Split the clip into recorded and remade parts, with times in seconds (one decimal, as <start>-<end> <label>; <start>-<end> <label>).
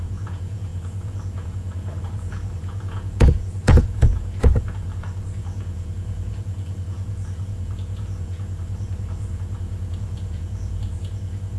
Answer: 0.0-11.6 remade